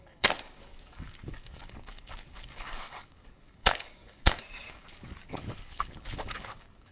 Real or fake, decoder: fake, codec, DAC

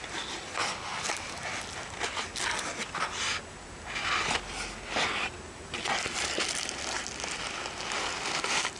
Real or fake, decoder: real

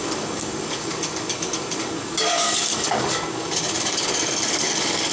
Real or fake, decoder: fake, codec, DAC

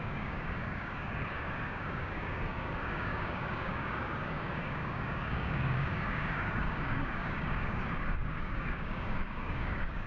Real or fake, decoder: fake, codec, DAC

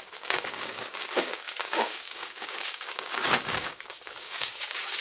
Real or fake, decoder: fake, codec, DAC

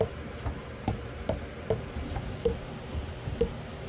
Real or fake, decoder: real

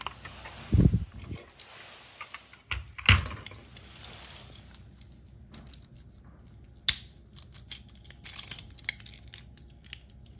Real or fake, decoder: real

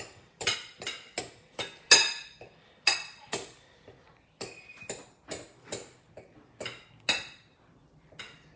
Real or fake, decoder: real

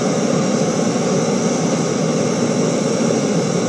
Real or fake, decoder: real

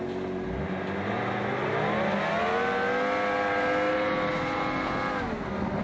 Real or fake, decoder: real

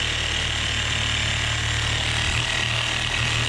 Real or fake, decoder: real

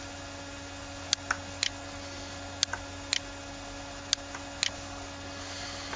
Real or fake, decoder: real